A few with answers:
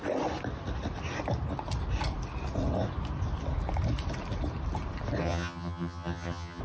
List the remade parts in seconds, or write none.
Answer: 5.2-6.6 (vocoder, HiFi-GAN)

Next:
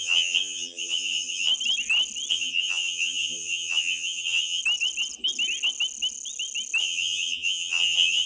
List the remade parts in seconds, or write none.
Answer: 0.0-1.5 (vocoder, HiFi-GAN); 2.3-4.6; 6.8-8.3

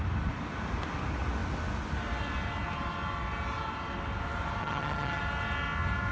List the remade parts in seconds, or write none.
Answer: 4.6-5.2 (vocoder, HiFi-GAN)

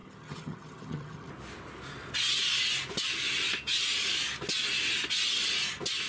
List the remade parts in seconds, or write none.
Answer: 0.0-1.3 (vocoder, HiFi-GAN)

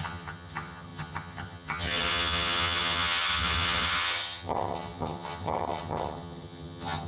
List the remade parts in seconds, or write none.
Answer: 0.0-7.1 (vocoder, HiFi-GAN)

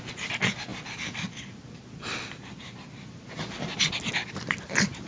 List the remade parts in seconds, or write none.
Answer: none